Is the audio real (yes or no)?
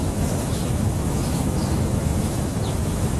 no